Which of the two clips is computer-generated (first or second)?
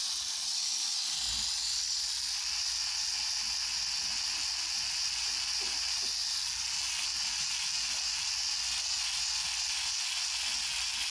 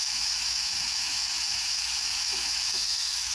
second